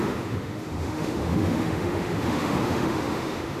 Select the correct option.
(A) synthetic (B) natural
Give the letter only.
A